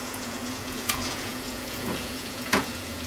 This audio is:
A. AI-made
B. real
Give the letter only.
A